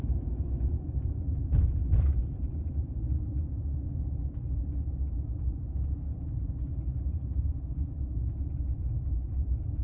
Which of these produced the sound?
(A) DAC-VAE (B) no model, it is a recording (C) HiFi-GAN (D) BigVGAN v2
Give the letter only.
D